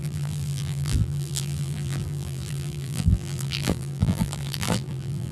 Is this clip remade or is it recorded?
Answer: remade